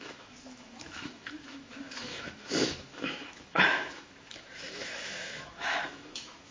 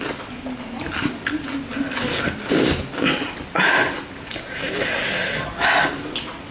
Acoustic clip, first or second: second